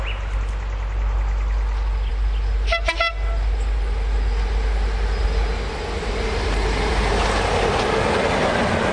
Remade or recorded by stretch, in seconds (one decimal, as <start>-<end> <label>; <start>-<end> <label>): 0.0-8.9 recorded